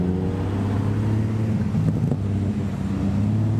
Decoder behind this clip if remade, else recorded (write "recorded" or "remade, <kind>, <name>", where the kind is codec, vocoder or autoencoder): recorded